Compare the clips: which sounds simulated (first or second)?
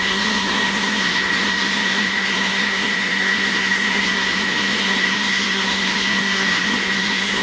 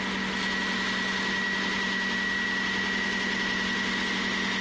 first